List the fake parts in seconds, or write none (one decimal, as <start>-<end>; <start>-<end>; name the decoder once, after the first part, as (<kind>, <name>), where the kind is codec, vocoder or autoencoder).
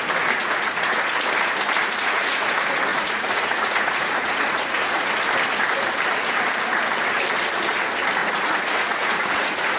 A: 0.4-1.1 (vocoder, Vocos); 1.8-2.5; 2.9-5.2; 8.2-9.8